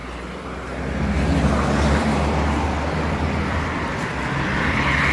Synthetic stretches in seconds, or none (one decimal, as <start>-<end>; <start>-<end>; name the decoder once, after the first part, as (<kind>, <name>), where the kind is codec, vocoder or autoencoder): 3.1-5.1 (vocoder, BigVGAN v2)